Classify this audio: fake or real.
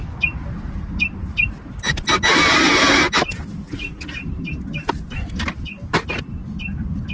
real